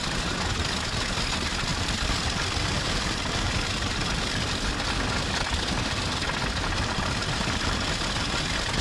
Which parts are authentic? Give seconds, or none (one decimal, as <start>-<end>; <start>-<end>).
0.0-1.7; 4.7-8.8